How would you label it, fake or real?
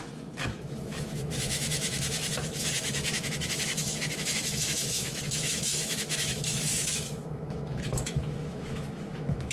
fake